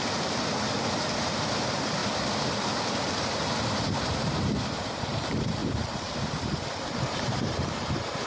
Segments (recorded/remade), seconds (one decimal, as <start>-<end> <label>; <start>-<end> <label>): 0.0-2.0 remade; 2.0-3.7 recorded; 3.7-8.3 remade